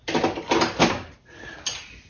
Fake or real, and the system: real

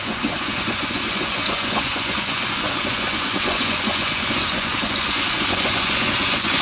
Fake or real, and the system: fake, vocoder, Vocos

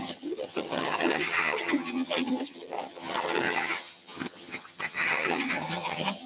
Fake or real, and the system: fake, vocoder, HiFi-GAN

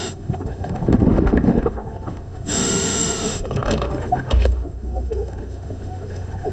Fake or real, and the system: fake, autoencoder, DAC-VAE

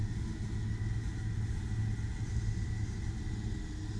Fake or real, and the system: real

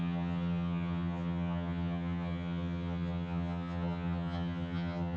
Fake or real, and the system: fake, vocoder, HiFi-GAN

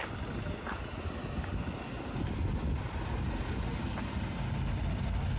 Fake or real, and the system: real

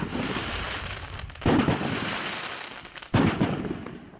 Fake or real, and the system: real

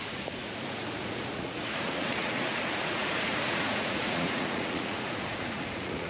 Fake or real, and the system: fake, vocoder, Vocos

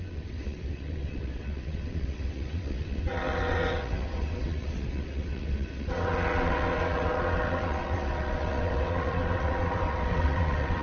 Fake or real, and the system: fake, vocoder, WaveNeXt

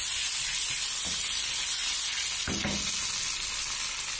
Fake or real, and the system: real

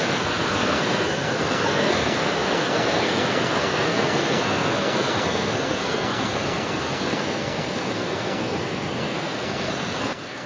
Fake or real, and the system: fake, codec, SNAC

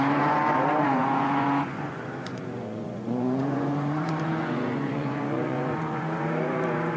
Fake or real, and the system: fake, vocoder, Vocos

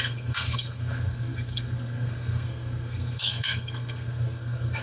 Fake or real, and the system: fake, codec, SNAC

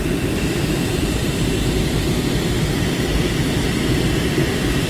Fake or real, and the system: fake, vocoder, BigVGAN v2